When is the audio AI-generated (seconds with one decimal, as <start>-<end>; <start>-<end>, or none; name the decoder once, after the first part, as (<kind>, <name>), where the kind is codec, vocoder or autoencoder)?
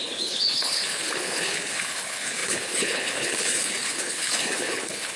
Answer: 0.0-5.2 (codec, HILCodec)